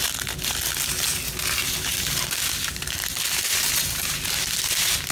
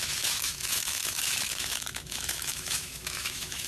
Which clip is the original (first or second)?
first